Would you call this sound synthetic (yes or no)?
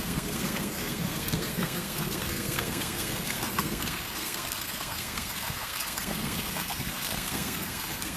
yes